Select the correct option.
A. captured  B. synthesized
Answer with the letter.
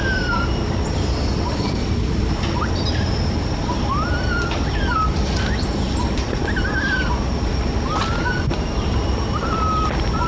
A